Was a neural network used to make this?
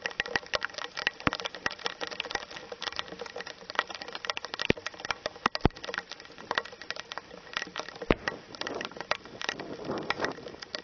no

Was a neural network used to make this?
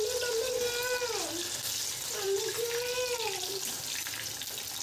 no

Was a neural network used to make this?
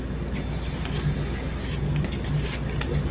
no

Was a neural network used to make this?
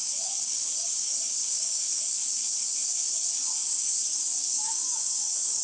yes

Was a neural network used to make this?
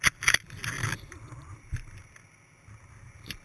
yes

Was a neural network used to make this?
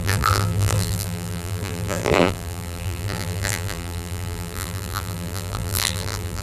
yes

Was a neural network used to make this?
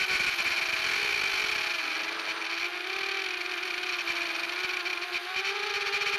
no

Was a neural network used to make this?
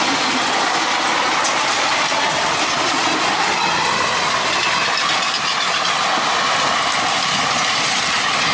no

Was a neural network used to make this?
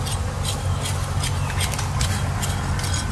no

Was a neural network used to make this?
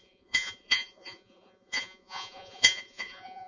yes